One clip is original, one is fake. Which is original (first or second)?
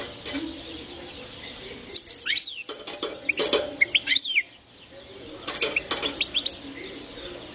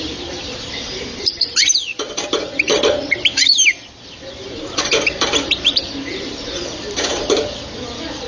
first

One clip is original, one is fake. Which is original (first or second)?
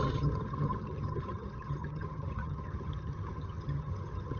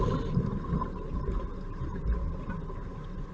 second